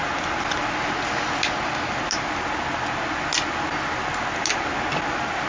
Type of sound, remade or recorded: recorded